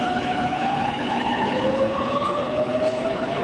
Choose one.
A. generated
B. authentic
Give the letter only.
A